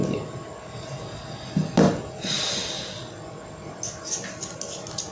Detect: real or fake real